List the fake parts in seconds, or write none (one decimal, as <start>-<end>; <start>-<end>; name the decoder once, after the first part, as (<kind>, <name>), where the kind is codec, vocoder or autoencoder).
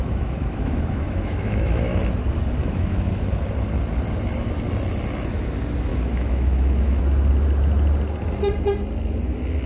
0.0-2.0 (autoencoder, DAC-VAE); 2.6-3.1; 5.9-7.0